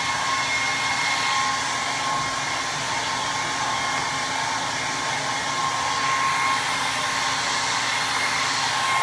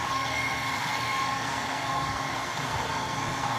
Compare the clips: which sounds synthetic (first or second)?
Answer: second